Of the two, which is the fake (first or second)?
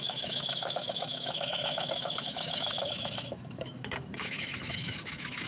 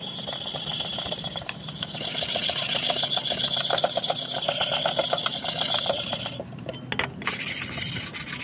first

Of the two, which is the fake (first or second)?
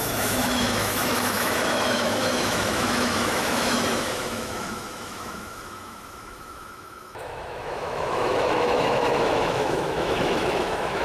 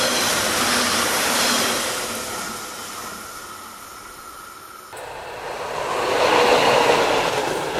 first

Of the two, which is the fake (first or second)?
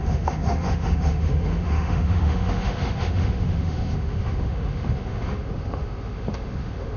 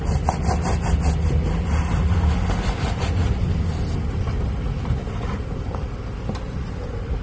first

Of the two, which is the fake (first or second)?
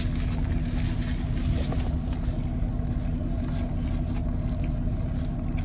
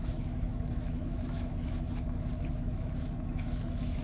second